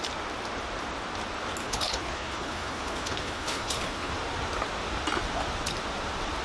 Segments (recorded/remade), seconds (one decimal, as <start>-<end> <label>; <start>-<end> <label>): 0.0-1.6 recorded; 1.6-4.1 remade; 4.1-6.4 recorded